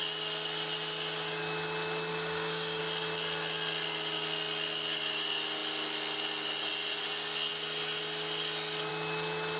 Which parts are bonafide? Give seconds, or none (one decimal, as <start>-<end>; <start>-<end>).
0.0-2.1; 2.8-9.6

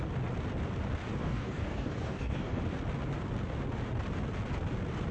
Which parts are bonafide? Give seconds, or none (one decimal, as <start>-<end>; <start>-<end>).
0.0-1.2; 2.6-5.1

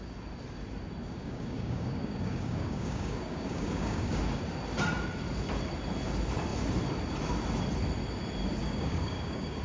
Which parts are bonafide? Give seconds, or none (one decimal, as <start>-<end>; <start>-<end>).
0.0-1.0; 4.2-8.6

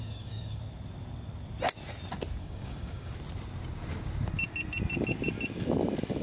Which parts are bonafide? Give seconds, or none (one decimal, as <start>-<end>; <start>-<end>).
0.6-2.4; 3.1-6.2

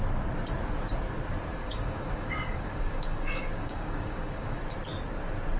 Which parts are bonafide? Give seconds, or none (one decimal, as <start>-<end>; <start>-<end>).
0.0-1.5; 4.6-5.6

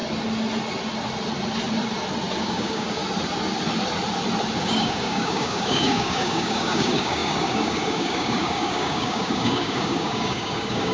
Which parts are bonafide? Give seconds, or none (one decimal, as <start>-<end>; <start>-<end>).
0.0-2.4; 3.0-4.6

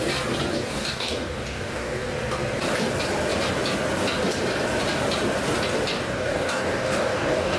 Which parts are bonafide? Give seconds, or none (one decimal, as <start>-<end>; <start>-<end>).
0.0-0.5; 2.1-6.0

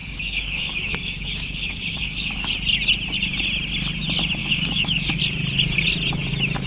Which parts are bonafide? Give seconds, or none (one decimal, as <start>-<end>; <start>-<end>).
2.5-4.4; 5.2-6.7